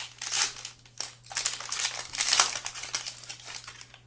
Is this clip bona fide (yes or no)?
yes